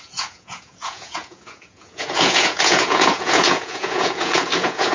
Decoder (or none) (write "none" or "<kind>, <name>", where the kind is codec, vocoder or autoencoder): vocoder, Vocos